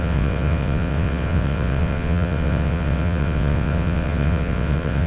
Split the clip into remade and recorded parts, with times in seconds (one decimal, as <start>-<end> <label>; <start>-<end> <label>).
0.0-5.1 remade